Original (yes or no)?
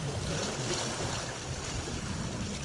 yes